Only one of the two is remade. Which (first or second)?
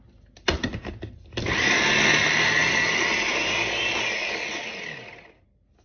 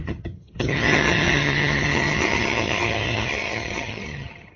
second